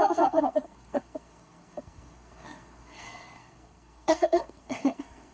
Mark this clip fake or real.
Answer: fake